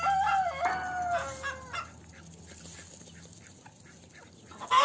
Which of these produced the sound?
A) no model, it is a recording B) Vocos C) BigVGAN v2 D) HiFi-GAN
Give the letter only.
A